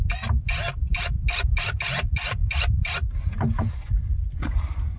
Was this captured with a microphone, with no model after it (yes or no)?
yes